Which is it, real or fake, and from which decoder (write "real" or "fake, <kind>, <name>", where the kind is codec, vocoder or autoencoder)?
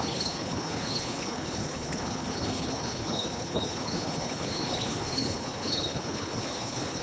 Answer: fake, codec, HILCodec